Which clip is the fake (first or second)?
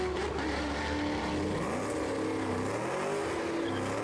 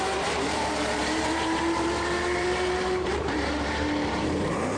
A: second